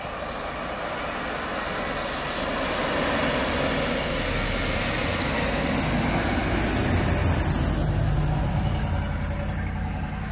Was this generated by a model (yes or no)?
no